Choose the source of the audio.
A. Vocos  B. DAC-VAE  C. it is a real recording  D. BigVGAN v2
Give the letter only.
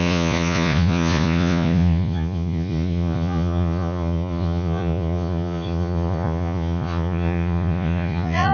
A